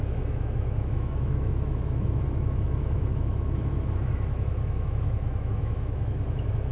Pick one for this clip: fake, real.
fake